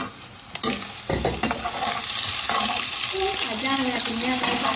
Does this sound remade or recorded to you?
recorded